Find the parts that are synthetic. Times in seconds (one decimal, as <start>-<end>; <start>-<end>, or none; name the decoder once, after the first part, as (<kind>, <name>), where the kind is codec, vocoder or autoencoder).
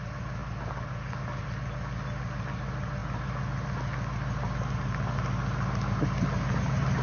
none